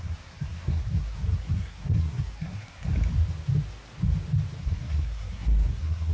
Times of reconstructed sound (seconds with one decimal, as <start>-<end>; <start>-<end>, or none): 0.0-2.9; 4.6-6.1